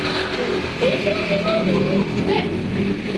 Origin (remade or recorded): recorded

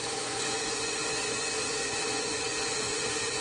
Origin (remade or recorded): remade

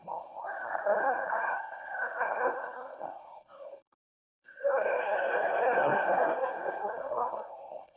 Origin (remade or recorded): remade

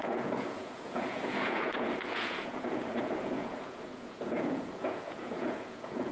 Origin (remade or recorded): remade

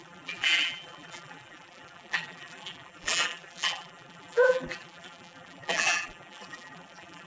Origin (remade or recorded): remade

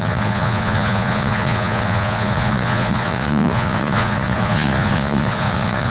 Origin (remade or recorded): remade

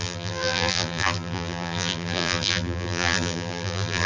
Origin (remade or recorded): remade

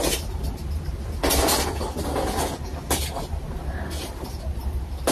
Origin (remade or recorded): recorded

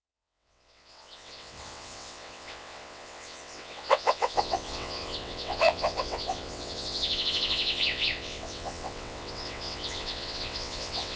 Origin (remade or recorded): remade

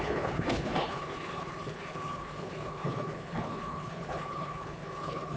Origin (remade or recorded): remade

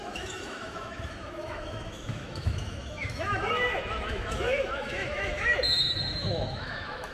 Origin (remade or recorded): remade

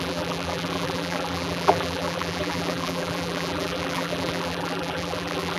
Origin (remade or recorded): remade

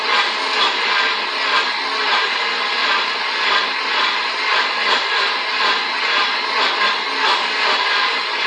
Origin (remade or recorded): recorded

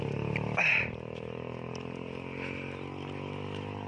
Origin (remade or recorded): recorded